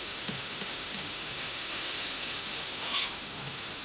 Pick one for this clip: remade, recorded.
remade